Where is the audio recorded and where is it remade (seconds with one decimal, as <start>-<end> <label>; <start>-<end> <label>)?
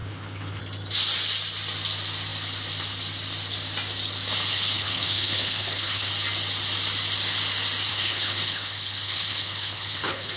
0.0-0.6 remade; 0.6-4.5 recorded; 4.5-6.1 remade; 6.1-7.9 recorded; 7.9-10.4 remade